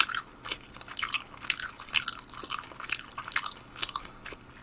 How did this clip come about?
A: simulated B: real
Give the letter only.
B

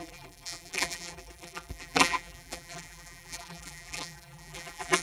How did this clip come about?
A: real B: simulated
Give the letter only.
B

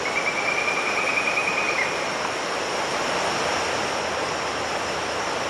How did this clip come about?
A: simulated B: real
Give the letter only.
B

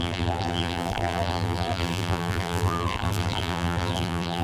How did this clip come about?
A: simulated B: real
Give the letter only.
A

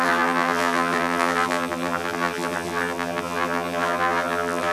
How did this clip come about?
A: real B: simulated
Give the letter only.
B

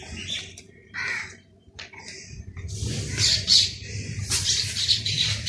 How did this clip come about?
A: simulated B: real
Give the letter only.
A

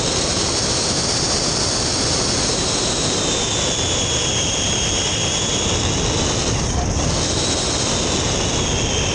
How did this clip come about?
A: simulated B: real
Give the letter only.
B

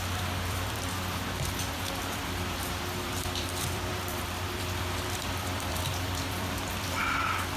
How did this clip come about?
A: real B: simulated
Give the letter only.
B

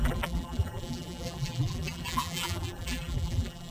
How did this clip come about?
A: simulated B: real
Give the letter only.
A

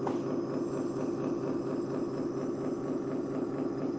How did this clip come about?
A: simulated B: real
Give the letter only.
B